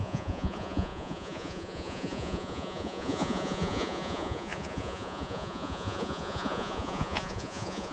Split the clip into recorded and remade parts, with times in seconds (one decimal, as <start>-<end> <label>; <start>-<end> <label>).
0.0-7.9 remade